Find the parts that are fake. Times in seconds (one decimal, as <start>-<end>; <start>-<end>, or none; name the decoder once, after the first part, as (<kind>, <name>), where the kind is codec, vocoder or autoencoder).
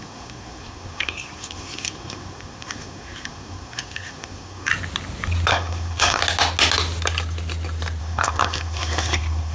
0.0-4.7 (codec, SNAC); 5.5-6.2; 8.0-9.5